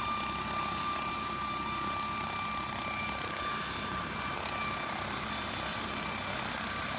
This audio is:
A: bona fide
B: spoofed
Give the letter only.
A